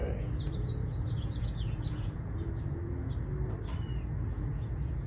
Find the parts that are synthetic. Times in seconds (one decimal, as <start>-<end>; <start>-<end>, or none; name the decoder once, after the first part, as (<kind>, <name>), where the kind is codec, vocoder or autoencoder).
0.0-3.1 (vocoder, Vocos); 3.9-5.1